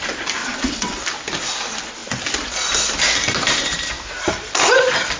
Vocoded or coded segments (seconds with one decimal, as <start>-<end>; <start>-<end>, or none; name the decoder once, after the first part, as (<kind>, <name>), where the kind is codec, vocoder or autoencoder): 0.4-1.0 (vocoder, WaveNeXt)